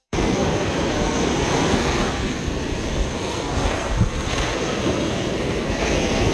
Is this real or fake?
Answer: fake